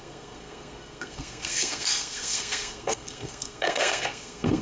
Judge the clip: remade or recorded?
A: remade